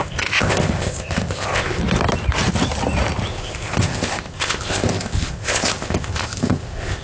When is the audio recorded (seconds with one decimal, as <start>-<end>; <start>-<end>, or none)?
1.8-3.3